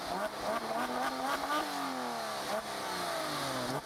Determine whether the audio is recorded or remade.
recorded